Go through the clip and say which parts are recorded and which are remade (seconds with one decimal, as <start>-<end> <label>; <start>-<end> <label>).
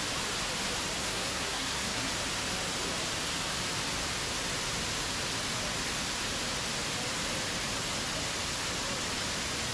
0.0-1.0 recorded; 1.0-2.1 remade; 2.1-9.7 recorded